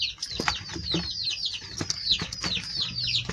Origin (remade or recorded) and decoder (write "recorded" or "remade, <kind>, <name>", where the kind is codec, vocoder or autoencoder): recorded